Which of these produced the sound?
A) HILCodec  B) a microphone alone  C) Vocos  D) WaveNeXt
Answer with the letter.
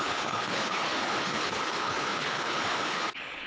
A